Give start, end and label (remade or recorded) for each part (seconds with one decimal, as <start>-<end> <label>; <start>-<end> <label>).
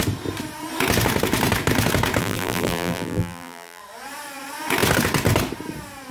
0.0-2.2 recorded; 2.2-3.8 remade; 3.8-6.1 recorded